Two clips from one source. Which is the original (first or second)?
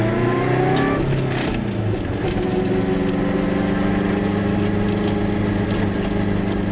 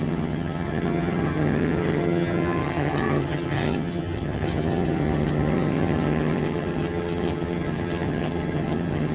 first